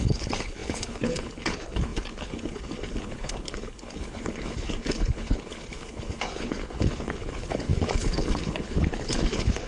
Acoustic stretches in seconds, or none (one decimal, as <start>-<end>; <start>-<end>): none